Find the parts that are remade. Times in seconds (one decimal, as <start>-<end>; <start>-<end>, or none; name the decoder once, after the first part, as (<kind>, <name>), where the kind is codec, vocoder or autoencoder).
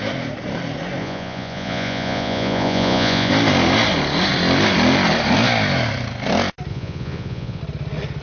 1.0-3.3 (vocoder, Vocos); 6.7-7.6